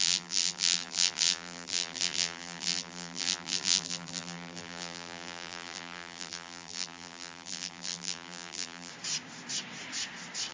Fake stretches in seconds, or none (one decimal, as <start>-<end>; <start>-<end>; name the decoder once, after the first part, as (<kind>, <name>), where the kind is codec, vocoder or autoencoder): 0.0-8.9 (vocoder, BigVGAN v2)